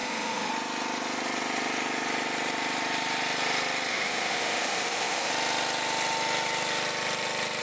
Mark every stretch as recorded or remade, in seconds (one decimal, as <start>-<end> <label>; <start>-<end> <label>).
0.0-0.5 remade; 0.5-3.9 recorded; 3.9-5.3 remade; 5.3-7.6 recorded